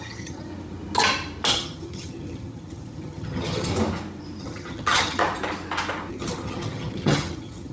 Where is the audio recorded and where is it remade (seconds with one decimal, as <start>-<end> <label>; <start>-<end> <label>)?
0.0-0.5 remade; 0.5-1.5 recorded; 1.5-3.7 remade; 3.7-4.4 recorded; 4.4-5.2 remade; 5.2-6.1 recorded; 6.1-7.7 remade